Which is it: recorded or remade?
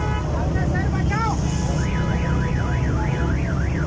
recorded